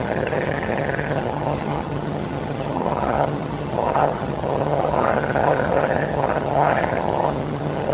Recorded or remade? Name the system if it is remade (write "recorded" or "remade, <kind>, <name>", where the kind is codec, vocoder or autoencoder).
remade, vocoder, HiFi-GAN